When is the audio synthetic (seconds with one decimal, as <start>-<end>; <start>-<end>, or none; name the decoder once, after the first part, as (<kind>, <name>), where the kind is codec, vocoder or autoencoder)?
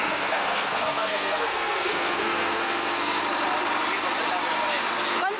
0.0-3.2 (codec, SNAC)